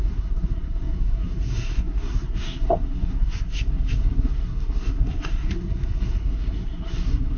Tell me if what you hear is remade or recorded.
remade